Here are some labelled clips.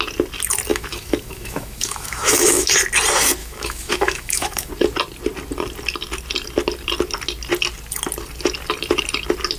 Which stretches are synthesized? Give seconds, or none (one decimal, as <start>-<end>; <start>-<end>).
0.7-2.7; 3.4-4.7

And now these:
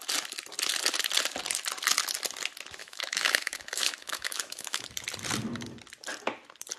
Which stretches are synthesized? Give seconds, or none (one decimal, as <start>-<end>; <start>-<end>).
2.8-4.8

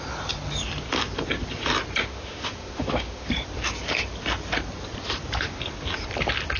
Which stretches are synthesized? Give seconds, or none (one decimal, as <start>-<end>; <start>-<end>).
2.0-3.3

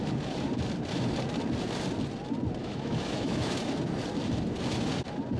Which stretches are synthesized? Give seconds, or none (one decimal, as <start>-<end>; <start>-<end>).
2.6-3.7